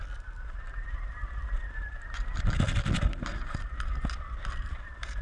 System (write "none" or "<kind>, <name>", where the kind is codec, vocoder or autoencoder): none